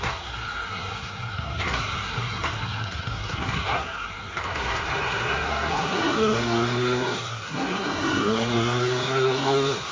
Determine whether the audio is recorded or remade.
remade